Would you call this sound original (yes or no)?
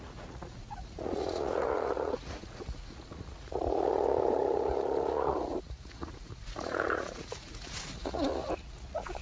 no